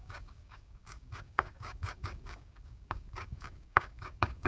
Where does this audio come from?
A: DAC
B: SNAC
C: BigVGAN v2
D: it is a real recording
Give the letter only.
A